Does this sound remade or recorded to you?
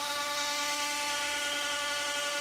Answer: remade